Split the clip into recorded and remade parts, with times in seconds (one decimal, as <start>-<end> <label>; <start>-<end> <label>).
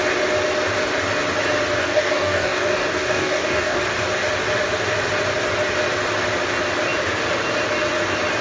0.0-1.8 recorded; 1.8-3.8 remade; 3.8-8.4 recorded